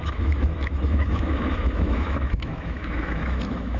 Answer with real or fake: fake